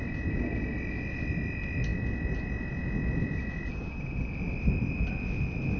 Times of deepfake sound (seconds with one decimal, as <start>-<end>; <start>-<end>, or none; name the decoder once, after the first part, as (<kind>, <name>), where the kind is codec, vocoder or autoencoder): none